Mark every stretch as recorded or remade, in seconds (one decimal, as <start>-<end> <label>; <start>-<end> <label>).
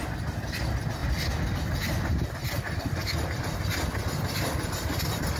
0.0-5.4 recorded